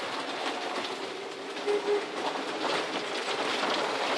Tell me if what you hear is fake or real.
real